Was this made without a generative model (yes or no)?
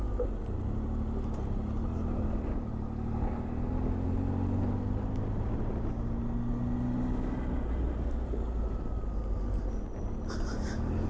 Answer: yes